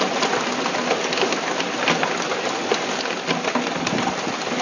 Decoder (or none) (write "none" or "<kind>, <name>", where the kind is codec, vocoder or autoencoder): none